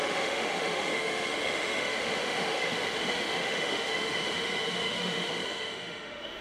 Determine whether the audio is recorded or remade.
remade